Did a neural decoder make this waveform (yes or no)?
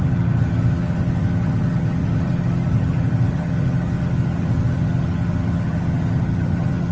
yes